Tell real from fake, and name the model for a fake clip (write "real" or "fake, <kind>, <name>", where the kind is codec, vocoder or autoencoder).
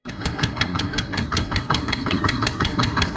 fake, codec, SNAC